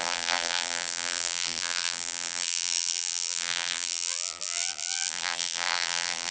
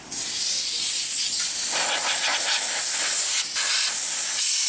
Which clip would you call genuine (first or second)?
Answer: second